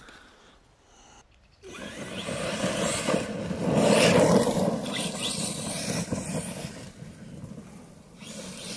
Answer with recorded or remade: recorded